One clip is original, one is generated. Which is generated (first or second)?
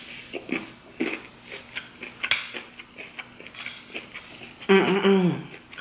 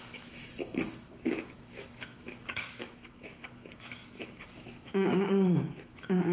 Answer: second